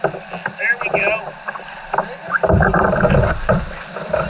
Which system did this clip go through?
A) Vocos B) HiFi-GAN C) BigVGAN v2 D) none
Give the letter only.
D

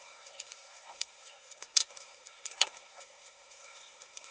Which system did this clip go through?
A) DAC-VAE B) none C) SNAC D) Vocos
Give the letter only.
C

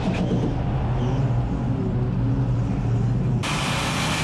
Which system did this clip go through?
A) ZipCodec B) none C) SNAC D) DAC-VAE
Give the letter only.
B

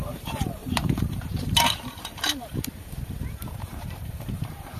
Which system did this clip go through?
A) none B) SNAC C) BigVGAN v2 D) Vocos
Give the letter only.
C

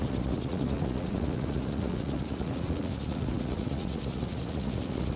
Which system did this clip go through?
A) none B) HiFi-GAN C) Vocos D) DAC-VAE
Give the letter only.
C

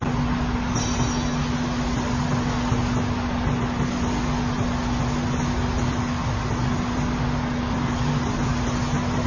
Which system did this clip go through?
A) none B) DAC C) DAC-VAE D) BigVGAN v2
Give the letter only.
A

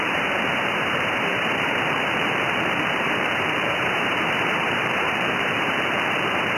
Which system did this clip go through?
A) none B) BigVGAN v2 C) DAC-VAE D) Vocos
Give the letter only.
B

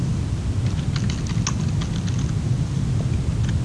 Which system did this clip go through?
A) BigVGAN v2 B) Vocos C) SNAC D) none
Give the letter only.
D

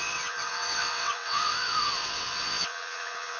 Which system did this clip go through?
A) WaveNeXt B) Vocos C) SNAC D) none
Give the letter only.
A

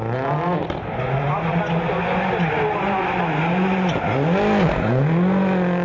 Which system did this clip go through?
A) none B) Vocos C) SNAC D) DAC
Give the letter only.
A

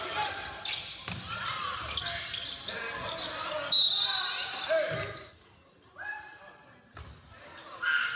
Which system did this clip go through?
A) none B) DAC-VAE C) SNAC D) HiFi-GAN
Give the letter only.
A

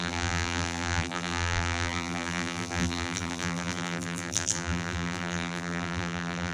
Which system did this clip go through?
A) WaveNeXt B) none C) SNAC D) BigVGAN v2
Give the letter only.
D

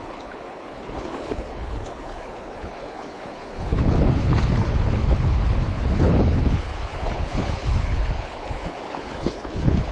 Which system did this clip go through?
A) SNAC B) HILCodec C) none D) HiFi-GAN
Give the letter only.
B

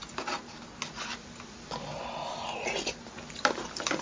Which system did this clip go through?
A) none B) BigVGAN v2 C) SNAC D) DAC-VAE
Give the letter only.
A